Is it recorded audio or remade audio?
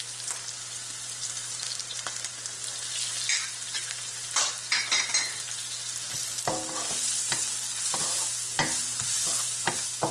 recorded